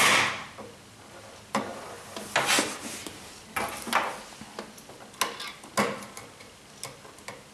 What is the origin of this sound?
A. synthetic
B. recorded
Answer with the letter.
B